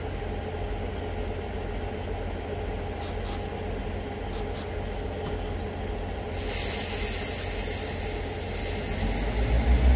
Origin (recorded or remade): recorded